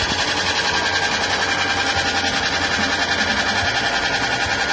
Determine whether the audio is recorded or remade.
recorded